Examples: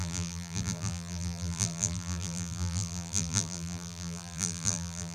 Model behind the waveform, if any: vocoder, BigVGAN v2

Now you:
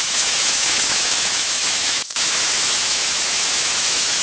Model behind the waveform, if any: autoencoder, DAC-VAE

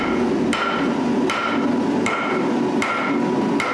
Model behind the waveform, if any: none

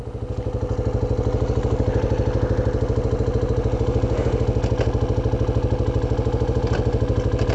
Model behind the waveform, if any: none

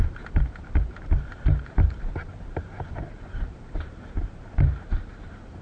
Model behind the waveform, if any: vocoder, BigVGAN v2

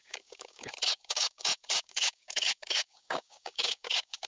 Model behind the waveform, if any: codec, DAC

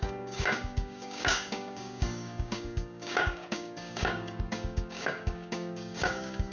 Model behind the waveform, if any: codec, DAC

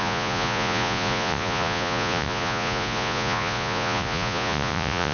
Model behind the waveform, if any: vocoder, Vocos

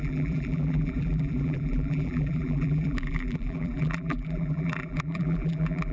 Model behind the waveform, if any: vocoder, BigVGAN v2